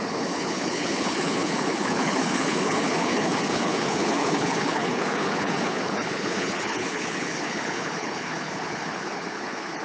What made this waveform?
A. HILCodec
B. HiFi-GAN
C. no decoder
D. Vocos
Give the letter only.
A